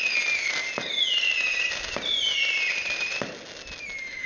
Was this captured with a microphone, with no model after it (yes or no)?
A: yes